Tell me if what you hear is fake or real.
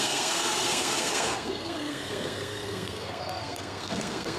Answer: fake